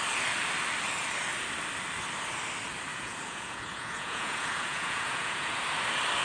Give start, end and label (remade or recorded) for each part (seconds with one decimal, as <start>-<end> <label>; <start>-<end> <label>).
0.0-2.9 recorded; 2.9-5.6 remade; 5.6-6.2 recorded